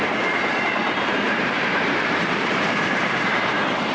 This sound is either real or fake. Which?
fake